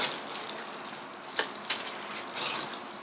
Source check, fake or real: real